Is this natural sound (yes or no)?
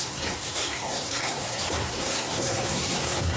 no